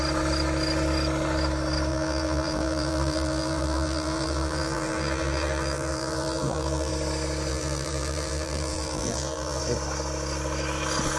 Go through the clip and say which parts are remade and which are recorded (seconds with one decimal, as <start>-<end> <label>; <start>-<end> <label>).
0.0-1.9 recorded; 1.9-6.9 remade; 6.9-7.5 recorded; 7.5-9.6 remade; 9.6-11.2 recorded

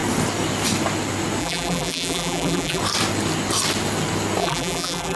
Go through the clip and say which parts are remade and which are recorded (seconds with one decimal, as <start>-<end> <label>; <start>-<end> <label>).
0.0-1.4 recorded; 1.4-2.8 remade; 2.8-4.4 recorded; 4.4-5.2 remade

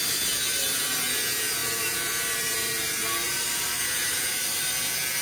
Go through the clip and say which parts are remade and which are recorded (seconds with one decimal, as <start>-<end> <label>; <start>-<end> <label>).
0.0-1.6 recorded; 1.6-4.7 remade; 4.7-5.2 recorded

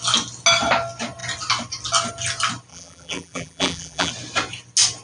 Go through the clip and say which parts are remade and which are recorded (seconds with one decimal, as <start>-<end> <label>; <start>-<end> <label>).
0.0-2.7 recorded; 2.7-4.1 remade; 4.1-5.0 recorded

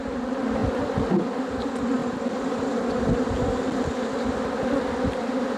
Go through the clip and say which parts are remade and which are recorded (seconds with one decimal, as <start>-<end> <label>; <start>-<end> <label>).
0.0-0.6 remade; 0.6-1.2 recorded; 1.2-2.0 remade; 2.0-5.6 recorded

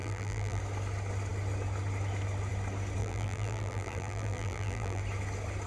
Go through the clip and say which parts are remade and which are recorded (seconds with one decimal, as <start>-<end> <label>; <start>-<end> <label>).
0.0-0.6 remade; 0.6-3.0 recorded; 3.0-5.0 remade; 5.0-5.7 recorded

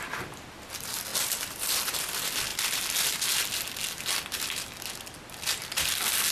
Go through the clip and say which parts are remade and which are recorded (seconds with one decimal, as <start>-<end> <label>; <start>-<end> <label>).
0.0-1.1 recorded; 1.1-1.8 remade; 1.8-6.3 recorded